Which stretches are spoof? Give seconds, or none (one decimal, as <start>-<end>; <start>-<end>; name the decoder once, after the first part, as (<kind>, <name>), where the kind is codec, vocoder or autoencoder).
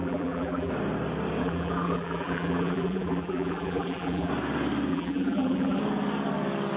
0.0-0.7 (vocoder, BigVGAN v2); 1.4-4.3; 4.9-5.8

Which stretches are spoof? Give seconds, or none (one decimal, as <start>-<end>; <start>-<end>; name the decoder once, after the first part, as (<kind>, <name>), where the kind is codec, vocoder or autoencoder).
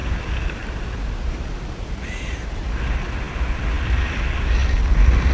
0.0-2.8 (vocoder, BigVGAN v2)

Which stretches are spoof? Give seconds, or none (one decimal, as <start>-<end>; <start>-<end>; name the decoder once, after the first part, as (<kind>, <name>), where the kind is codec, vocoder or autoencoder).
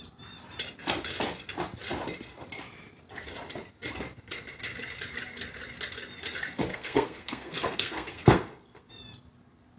6.7-8.9 (codec, SNAC)